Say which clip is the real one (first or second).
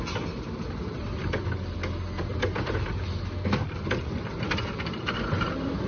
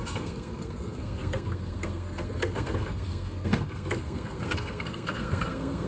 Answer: first